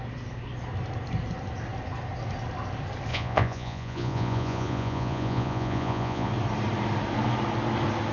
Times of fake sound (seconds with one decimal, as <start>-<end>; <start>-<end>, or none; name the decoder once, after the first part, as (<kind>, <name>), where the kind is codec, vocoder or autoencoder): 3.1-6.3 (vocoder, Vocos)